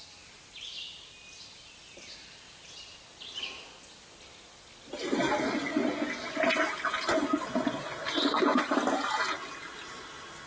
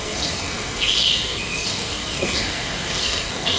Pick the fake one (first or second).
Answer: second